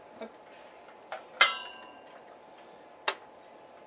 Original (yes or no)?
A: yes